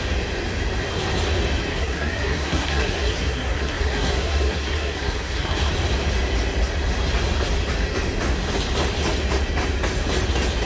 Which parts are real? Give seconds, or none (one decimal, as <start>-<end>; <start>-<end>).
0.0-1.7; 5.7-10.7